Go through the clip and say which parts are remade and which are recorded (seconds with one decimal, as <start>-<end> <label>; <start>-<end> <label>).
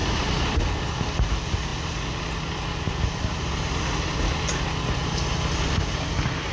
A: 0.0-5.0 recorded; 5.0-5.8 remade; 5.8-6.5 recorded